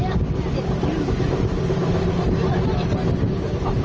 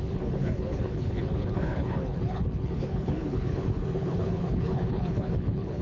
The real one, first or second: first